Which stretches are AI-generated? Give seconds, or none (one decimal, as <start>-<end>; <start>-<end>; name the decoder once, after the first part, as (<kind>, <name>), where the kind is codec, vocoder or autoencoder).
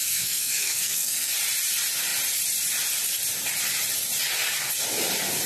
0.0-1.3 (codec, SNAC)